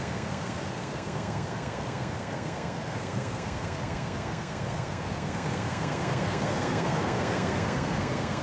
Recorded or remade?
remade